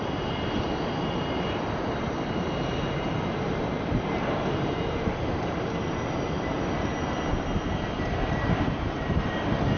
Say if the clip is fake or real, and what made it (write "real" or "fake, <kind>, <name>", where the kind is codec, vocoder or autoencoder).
fake, vocoder, BigVGAN v2